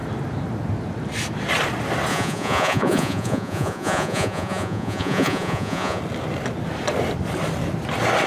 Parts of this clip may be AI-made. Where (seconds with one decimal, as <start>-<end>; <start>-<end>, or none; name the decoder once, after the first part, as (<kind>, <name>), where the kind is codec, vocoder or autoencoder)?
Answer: 2.1-6.0 (vocoder, Vocos)